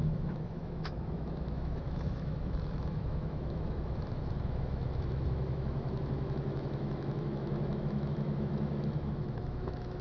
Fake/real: fake